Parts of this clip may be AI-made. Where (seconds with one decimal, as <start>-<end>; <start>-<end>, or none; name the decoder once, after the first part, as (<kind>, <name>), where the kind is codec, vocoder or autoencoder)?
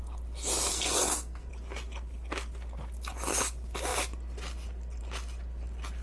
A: 0.7-1.5 (codec, SNAC)